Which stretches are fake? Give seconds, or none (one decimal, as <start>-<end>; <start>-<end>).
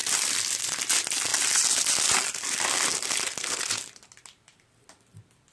0.0-0.6; 1.3-1.9